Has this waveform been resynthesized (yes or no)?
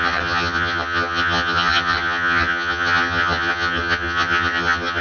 yes